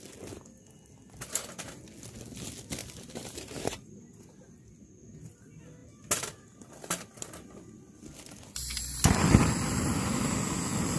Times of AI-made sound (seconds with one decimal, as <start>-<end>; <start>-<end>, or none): 2.8-4.0

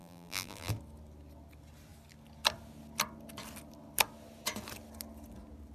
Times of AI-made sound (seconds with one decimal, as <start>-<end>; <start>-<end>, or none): 0.0-0.7